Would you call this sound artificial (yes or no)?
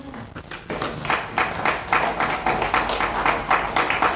no